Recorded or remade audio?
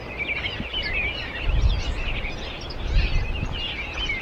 recorded